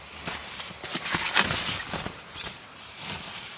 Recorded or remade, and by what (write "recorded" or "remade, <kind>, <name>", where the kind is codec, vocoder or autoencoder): recorded